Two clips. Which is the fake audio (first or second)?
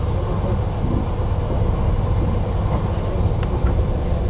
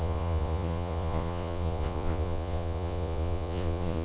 second